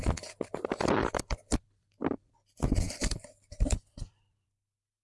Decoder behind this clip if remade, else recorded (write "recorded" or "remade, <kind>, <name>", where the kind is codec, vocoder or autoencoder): remade, vocoder, BigVGAN v2